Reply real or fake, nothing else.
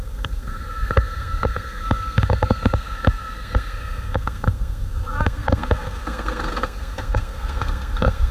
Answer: fake